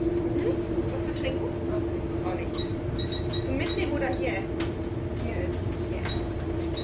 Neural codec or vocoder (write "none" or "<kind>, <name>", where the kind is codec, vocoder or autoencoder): none